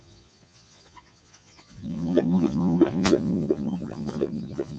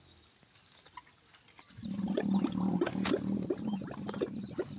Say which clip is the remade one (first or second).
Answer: first